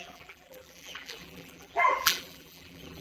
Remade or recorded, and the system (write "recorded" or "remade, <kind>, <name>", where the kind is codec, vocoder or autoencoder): remade, vocoder, BigVGAN v2